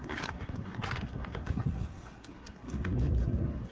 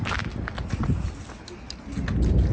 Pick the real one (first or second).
second